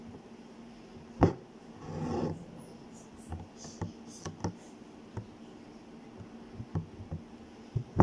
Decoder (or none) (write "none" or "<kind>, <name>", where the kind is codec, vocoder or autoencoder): none